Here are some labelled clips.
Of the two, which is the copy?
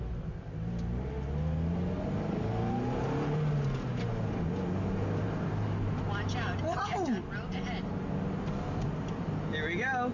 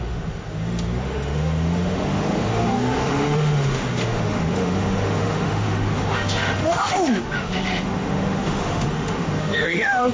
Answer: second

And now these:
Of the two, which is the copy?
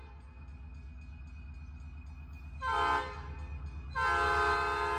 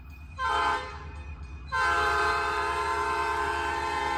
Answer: second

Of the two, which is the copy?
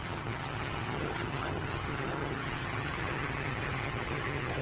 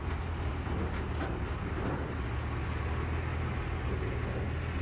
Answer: first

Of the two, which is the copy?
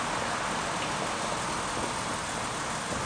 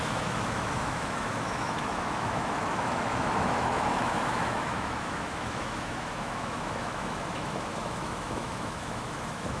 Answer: second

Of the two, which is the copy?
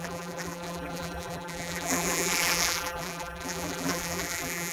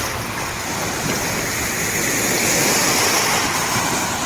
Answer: first